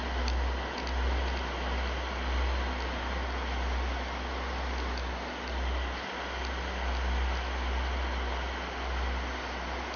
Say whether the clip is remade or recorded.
recorded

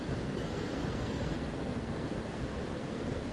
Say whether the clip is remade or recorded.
remade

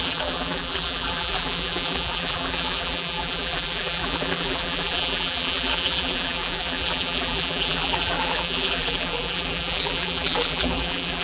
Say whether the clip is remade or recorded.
remade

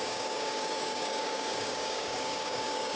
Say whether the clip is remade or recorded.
remade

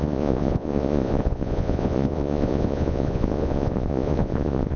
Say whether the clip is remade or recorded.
remade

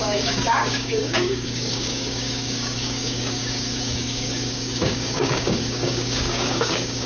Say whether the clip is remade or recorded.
remade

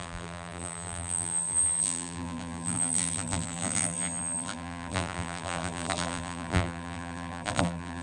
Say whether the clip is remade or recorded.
remade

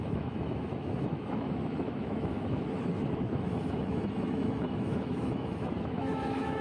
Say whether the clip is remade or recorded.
remade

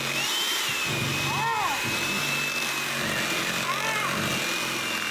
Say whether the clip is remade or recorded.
recorded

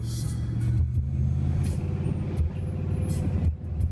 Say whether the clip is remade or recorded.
recorded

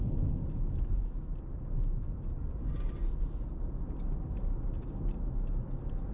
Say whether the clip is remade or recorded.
recorded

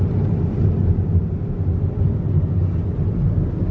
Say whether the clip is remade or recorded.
recorded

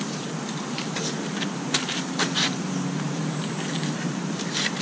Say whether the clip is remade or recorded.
remade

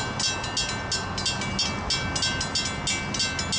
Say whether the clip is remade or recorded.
recorded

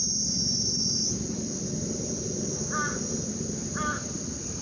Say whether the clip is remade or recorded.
recorded